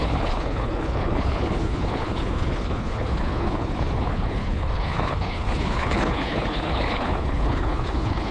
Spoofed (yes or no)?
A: yes